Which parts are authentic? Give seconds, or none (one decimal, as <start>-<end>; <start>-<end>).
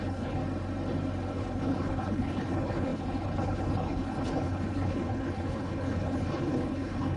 0.4-1.3